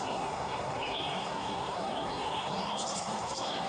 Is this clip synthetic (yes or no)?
yes